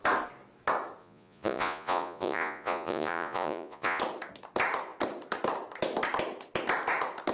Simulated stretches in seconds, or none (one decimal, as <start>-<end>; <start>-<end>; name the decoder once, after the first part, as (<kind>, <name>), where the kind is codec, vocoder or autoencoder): 1.0-4.0 (vocoder, Vocos)